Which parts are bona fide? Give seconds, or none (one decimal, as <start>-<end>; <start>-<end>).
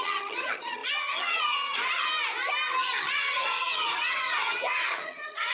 2.1-2.7